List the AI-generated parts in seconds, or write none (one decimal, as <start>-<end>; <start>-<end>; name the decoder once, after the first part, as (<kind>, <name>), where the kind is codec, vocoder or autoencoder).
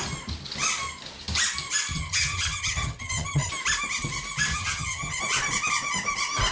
1.9-3.5 (vocoder, HiFi-GAN); 4.5-5.2